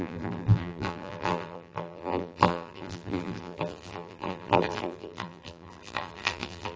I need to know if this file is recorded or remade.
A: remade